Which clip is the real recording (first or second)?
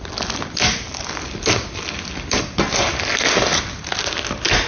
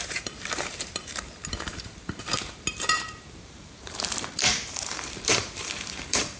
first